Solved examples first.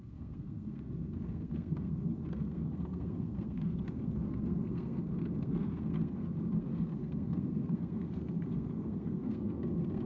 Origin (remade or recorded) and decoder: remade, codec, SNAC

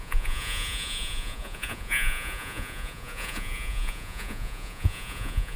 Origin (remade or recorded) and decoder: remade, vocoder, Vocos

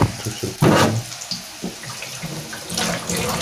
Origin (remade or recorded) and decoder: recorded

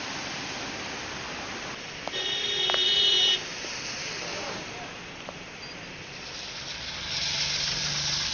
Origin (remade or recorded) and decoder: recorded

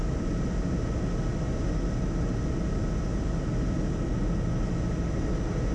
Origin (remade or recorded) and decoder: recorded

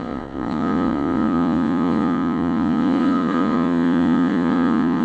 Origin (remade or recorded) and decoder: remade, vocoder, Vocos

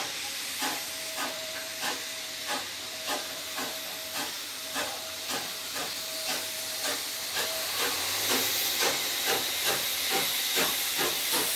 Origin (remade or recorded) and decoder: remade, vocoder, BigVGAN v2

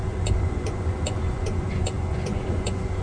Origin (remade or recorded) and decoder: remade, vocoder, Vocos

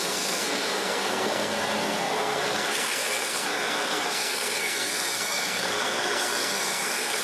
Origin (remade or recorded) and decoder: remade, codec, SNAC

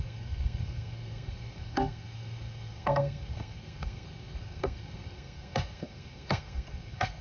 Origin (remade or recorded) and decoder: remade, codec, SNAC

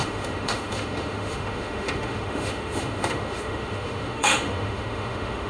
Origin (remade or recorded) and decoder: remade, autoencoder, DAC-VAE